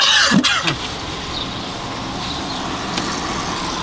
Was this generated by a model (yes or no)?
no